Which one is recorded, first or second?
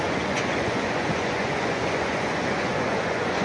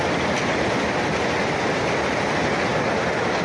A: second